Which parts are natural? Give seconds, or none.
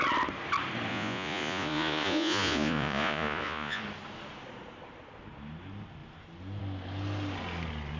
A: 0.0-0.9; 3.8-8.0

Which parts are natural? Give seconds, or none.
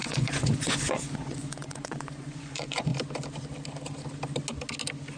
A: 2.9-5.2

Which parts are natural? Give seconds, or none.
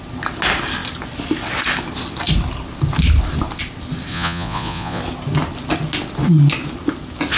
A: 0.0-4.1; 5.0-7.4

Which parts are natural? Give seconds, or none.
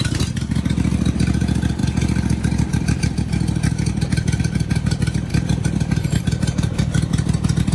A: 0.0-7.7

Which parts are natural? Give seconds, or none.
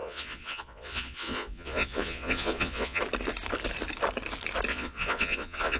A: 3.0-4.7